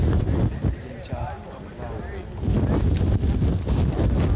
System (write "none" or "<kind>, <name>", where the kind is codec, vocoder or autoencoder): none